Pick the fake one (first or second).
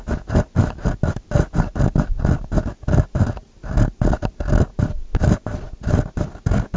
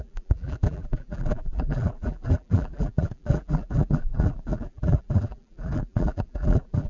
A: second